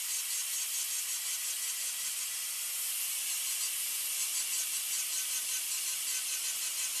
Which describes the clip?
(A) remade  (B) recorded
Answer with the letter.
B